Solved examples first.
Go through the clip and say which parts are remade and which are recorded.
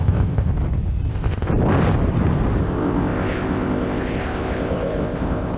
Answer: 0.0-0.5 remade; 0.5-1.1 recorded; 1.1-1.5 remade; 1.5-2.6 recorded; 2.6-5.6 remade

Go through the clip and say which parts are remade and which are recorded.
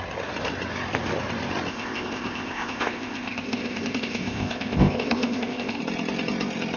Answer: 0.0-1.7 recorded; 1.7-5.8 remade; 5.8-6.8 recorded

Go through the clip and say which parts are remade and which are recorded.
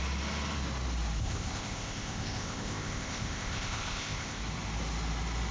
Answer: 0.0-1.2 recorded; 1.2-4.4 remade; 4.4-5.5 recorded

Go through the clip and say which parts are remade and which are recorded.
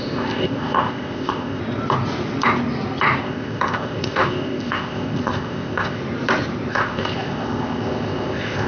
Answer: 0.0-1.6 remade; 1.6-3.2 recorded; 3.2-6.0 remade; 6.0-6.7 recorded; 6.7-8.7 remade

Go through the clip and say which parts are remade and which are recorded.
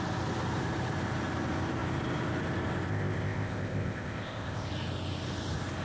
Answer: 0.0-2.9 recorded; 2.9-4.7 remade; 4.7-5.8 recorded